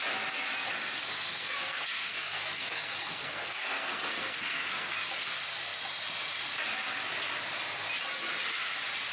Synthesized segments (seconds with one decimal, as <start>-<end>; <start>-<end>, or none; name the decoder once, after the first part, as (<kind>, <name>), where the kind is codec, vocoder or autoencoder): 1.3-4.9 (codec, SNAC)